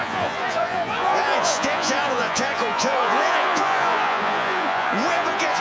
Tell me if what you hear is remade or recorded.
remade